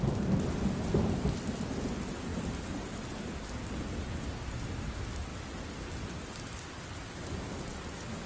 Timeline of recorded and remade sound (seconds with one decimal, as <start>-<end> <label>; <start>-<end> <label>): 0.0-8.3 recorded

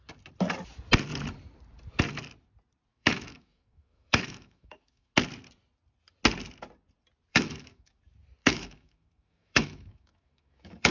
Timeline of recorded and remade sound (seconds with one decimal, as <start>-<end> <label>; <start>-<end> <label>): 0.0-2.9 recorded; 2.9-5.1 remade; 5.1-7.3 recorded; 7.3-8.0 remade; 8.0-8.4 recorded; 8.4-10.9 remade

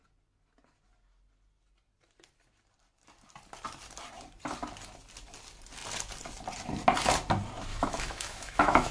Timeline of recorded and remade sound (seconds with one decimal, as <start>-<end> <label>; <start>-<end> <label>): 0.0-7.7 recorded; 7.7-8.9 remade

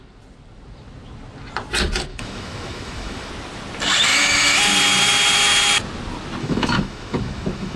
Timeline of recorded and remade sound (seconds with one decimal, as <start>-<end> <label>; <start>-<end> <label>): 0.0-2.1 recorded; 2.1-3.3 remade; 3.3-4.1 recorded; 4.1-4.7 remade; 4.7-6.4 recorded; 6.4-7.8 remade

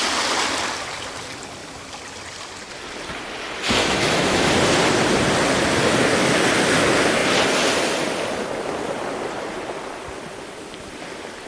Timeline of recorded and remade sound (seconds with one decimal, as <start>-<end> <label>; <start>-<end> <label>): 0.0-3.8 recorded; 3.8-4.5 remade; 4.5-11.5 recorded

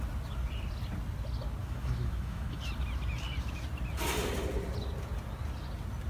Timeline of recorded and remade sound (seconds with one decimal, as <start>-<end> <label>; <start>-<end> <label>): 0.0-1.6 recorded; 1.6-2.6 remade; 2.6-6.1 recorded

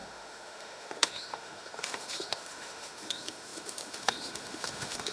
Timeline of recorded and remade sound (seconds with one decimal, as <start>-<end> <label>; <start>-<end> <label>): 0.0-5.1 remade

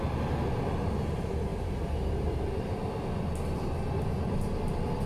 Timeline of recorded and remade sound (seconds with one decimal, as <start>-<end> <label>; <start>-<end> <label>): 0.0-5.1 recorded